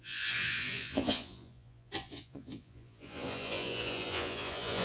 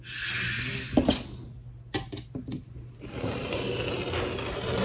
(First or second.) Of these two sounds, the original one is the second